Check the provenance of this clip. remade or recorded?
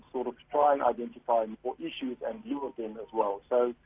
recorded